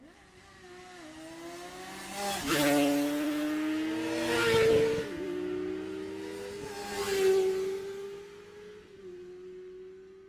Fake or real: real